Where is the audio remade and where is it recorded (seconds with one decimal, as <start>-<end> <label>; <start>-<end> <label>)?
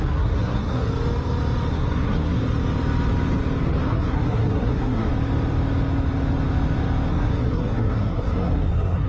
0.0-0.9 remade; 0.9-1.7 recorded; 1.7-2.4 remade; 2.4-3.8 recorded; 3.8-5.1 remade; 5.1-7.1 recorded; 7.1-9.1 remade